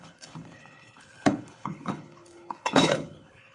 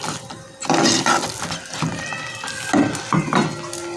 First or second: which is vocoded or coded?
first